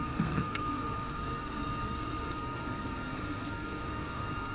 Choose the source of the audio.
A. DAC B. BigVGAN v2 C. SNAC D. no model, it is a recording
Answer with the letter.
C